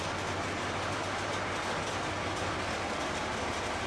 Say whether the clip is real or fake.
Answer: real